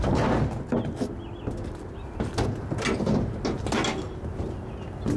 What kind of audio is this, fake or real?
real